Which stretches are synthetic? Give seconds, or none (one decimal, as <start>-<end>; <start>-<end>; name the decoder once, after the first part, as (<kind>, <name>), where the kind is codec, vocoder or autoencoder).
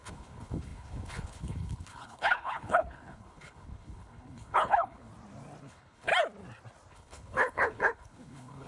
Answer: 0.0-5.1 (codec, HILCodec); 5.6-6.1; 6.9-8.7